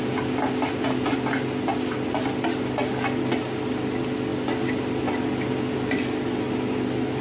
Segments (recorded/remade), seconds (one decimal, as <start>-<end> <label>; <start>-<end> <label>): 0.0-7.2 recorded